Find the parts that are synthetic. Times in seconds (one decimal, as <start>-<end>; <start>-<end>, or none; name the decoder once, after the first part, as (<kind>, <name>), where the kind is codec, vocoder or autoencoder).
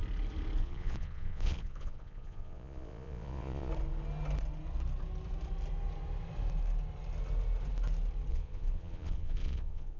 0.6-3.7 (vocoder, Vocos); 8.3-10.0